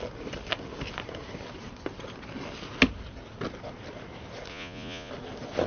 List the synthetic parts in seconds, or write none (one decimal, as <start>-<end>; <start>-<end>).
4.5-5.1